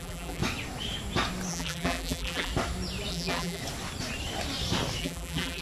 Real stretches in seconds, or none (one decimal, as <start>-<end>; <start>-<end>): 0.4-1.5; 2.5-3.1; 3.6-5.0